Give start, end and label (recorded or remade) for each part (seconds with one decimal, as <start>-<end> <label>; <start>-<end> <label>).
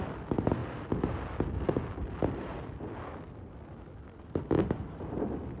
0.0-0.6 remade; 0.6-2.3 recorded; 2.3-5.6 remade